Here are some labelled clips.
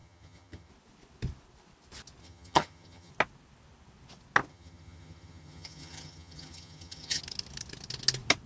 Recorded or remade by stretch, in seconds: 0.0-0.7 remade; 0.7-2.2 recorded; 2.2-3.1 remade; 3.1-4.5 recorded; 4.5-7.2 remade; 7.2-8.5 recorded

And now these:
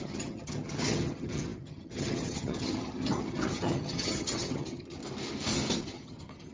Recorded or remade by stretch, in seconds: 0.0-5.0 remade; 5.0-5.8 recorded; 5.8-6.5 remade